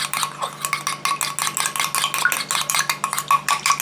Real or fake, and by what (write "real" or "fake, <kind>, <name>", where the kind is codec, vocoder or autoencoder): real